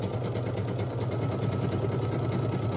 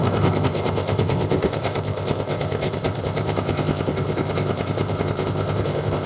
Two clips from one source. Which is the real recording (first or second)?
first